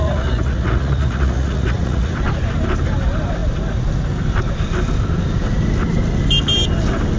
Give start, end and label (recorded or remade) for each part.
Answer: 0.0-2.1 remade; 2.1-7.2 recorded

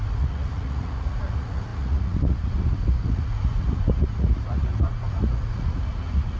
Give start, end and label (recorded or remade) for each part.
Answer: 0.0-6.4 remade

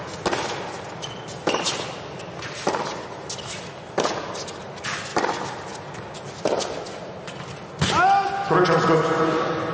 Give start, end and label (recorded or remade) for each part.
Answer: 0.0-9.7 recorded